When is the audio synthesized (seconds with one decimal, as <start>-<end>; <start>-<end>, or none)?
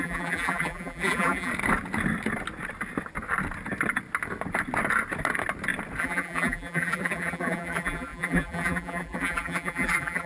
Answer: 0.0-1.5; 6.0-10.3